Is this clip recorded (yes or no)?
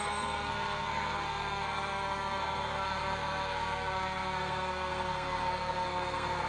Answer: no